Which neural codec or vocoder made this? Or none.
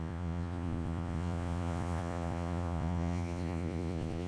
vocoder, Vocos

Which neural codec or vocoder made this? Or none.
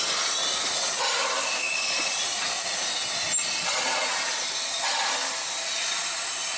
none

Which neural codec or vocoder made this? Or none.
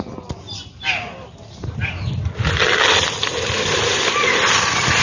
none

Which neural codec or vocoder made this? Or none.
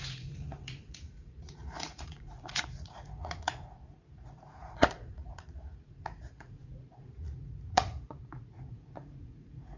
vocoder, Vocos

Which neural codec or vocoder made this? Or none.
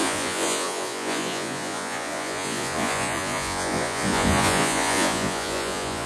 vocoder, Vocos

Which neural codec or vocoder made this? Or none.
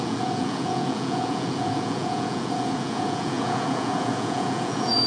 vocoder, Vocos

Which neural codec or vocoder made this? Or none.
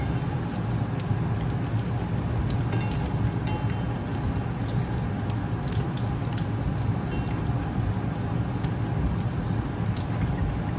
none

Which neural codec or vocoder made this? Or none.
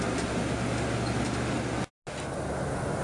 none